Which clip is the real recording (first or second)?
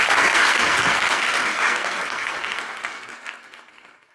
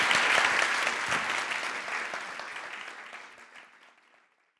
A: second